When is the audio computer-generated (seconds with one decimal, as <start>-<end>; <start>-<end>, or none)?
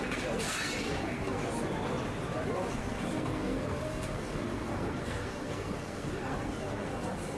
0.0-1.4; 2.7-7.4